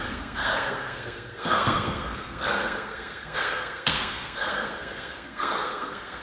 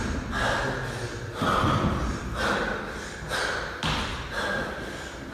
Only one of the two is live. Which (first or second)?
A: second